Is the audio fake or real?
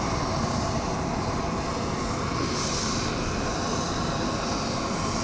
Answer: real